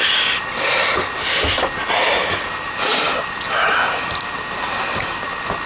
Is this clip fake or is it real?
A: real